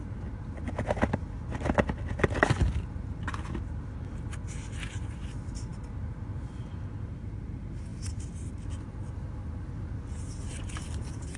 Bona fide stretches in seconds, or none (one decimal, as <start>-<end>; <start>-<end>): 0.0-11.4